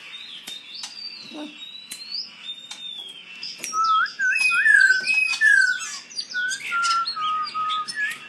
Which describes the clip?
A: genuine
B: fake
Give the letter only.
A